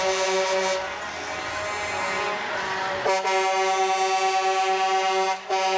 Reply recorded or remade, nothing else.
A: recorded